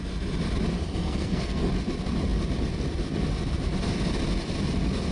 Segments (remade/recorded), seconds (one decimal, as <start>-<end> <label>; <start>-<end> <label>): 0.0-1.0 recorded; 1.0-1.7 remade; 1.7-5.1 recorded